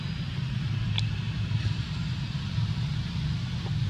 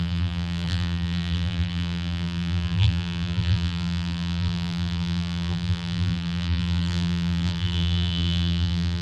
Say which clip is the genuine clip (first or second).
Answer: first